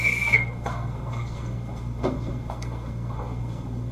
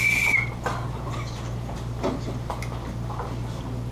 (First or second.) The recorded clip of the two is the second